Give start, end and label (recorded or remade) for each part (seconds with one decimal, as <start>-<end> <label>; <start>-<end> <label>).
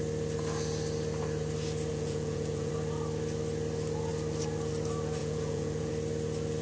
0.0-1.9 recorded; 1.9-2.7 remade; 2.7-5.2 recorded; 5.2-5.9 remade; 5.9-6.6 recorded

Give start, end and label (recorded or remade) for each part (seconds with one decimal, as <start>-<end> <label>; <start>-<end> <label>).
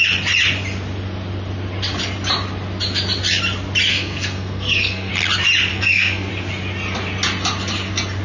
0.0-3.9 recorded; 3.9-5.1 remade; 5.1-5.7 recorded; 5.7-6.3 remade; 6.3-8.2 recorded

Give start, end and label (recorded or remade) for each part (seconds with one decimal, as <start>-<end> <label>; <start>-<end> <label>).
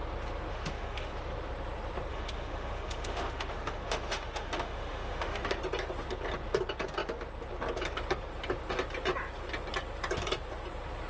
0.0-0.5 recorded; 0.5-1.1 remade; 1.1-2.1 recorded; 2.1-5.6 remade; 5.6-11.1 recorded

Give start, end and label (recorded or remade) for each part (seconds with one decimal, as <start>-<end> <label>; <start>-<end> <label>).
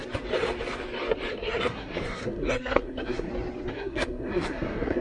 0.0-1.3 recorded; 1.3-3.3 remade; 3.3-3.7 recorded; 3.7-5.0 remade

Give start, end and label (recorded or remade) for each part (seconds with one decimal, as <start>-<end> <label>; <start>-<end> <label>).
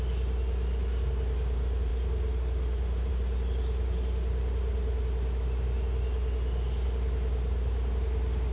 0.0-8.5 recorded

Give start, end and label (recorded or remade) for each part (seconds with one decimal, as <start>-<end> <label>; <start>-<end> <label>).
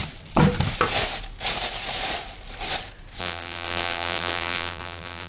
0.0-3.2 recorded; 3.2-5.3 remade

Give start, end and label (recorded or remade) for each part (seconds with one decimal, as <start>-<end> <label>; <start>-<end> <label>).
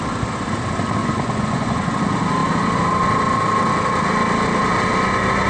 0.0-1.0 recorded; 1.0-2.0 remade; 2.0-5.5 recorded